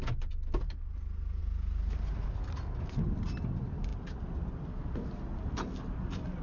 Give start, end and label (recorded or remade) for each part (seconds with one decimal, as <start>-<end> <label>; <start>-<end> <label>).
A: 0.0-6.4 recorded